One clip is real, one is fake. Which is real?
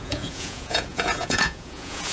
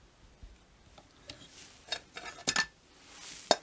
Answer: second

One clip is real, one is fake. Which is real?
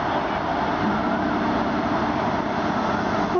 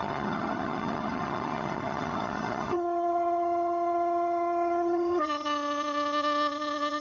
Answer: first